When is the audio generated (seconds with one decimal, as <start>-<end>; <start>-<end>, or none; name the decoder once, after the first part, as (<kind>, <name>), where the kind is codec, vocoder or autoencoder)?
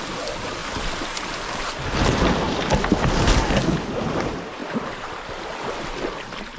none